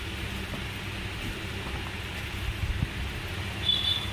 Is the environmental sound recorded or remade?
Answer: recorded